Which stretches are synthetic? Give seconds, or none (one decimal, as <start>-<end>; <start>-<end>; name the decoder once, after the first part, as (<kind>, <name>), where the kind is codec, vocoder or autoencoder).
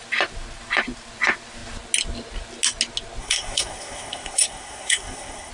3.2-5.5 (codec, SNAC)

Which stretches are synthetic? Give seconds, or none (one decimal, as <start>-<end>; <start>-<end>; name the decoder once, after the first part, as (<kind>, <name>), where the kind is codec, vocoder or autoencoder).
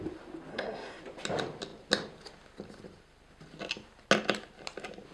0.5-1.0 (codec, SNAC)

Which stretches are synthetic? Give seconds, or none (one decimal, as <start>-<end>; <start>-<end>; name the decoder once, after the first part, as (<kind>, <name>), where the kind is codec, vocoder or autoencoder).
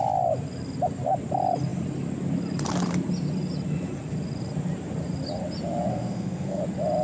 5.9-6.6 (codec, SNAC)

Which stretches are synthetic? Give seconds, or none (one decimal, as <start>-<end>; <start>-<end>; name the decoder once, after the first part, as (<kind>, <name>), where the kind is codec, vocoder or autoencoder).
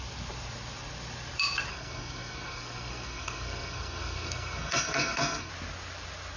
1.7-5.5 (codec, SNAC)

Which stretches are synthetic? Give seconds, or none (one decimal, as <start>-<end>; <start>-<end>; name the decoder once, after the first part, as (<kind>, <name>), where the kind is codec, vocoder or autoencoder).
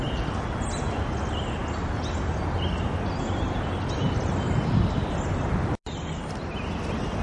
none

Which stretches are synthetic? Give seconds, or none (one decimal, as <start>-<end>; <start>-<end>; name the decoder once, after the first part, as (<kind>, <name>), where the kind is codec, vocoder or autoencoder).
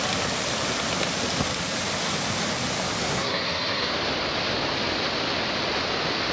3.0-3.9 (codec, SNAC)